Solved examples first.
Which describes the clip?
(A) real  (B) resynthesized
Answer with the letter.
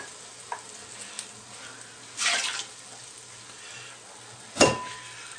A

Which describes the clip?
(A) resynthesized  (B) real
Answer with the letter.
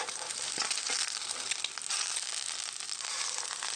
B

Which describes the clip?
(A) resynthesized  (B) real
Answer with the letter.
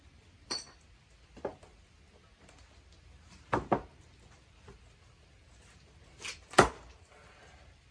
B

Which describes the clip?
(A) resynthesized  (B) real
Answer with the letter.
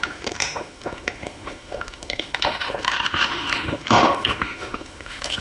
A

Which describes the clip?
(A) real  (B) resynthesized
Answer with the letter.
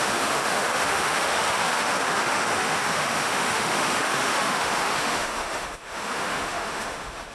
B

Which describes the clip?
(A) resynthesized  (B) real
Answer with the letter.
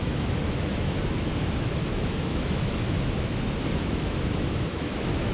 A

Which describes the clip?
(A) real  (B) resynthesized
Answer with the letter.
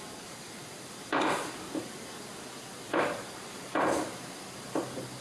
A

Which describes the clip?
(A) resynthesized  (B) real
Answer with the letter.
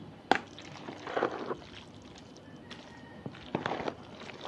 B